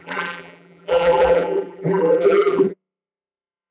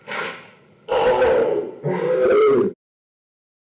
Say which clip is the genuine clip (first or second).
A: second